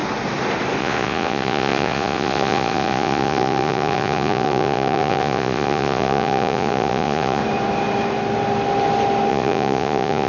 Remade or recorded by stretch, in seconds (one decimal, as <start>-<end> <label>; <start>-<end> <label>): 0.0-0.8 recorded; 0.8-7.4 remade; 7.4-9.3 recorded; 9.3-10.3 remade